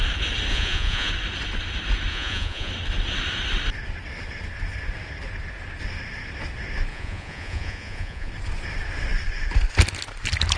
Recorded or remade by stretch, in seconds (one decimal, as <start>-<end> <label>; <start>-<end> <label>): 0.0-0.5 recorded; 0.5-1.1 remade; 1.1-2.1 recorded; 2.1-2.7 remade; 2.7-6.9 recorded; 6.9-8.3 remade; 8.3-10.6 recorded